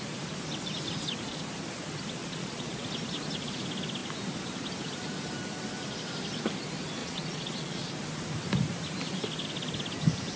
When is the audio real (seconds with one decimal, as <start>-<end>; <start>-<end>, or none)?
0.0-2.2; 2.8-7.0; 7.9-10.4